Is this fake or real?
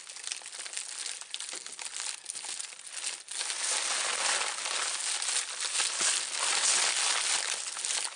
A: real